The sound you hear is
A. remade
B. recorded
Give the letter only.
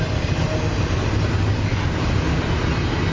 B